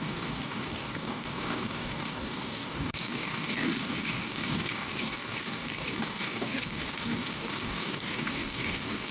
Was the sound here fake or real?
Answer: fake